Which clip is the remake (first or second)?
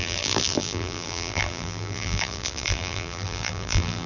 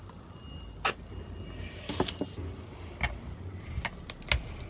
first